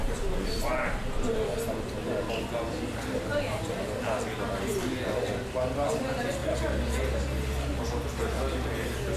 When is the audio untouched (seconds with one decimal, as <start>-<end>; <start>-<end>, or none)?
0.0-3.3; 3.8-9.2